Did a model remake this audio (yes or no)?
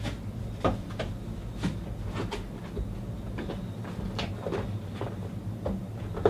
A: no